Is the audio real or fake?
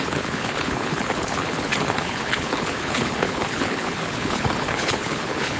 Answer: fake